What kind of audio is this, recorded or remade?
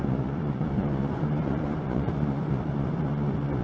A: remade